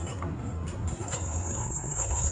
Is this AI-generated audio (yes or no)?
yes